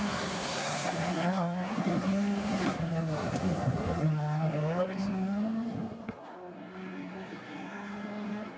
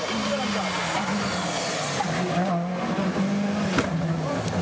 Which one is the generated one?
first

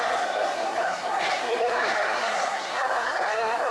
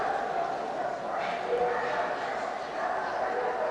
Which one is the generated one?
first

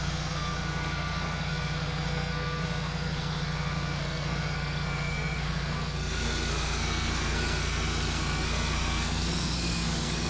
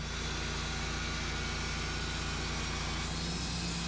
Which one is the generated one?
first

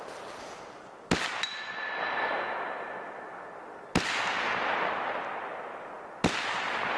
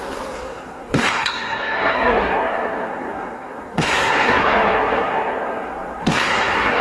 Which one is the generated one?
second